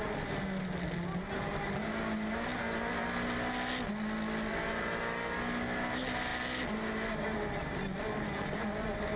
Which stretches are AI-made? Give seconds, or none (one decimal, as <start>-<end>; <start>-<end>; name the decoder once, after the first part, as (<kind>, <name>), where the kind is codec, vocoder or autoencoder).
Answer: none